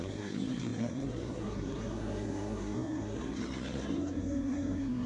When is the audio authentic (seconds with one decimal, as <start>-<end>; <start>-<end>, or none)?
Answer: none